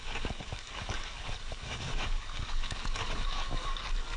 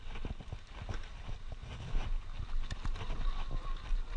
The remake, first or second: first